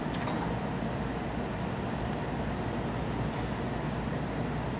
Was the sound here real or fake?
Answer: real